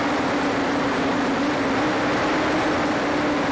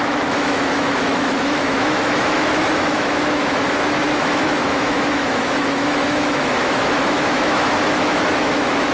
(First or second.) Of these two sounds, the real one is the first